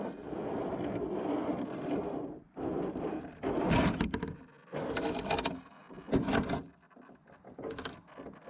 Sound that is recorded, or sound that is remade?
recorded